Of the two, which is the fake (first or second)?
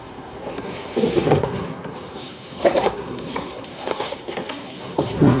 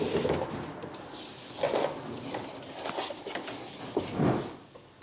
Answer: first